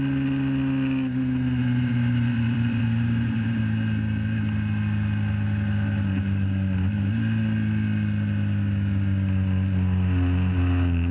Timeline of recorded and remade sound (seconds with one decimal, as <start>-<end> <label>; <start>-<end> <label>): 0.0-1.6 recorded; 1.6-3.6 remade; 3.6-11.1 recorded